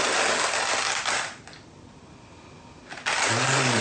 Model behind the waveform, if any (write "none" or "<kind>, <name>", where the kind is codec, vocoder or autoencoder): none